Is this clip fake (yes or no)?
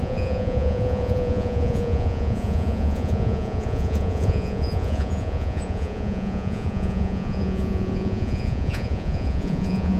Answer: yes